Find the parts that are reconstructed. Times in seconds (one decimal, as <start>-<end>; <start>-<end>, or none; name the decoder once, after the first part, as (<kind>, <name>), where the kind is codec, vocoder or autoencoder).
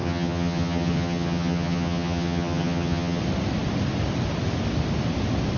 0.0-3.2 (vocoder, HiFi-GAN)